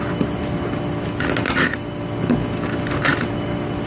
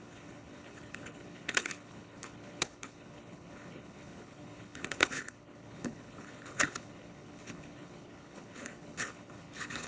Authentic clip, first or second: first